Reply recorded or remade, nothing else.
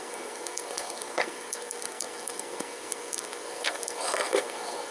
remade